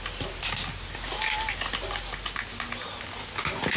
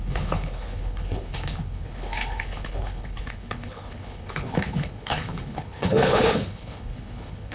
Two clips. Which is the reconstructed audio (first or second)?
second